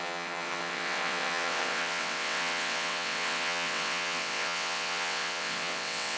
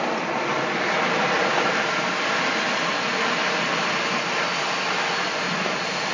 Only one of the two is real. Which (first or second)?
second